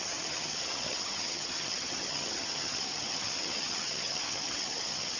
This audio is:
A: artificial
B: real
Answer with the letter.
A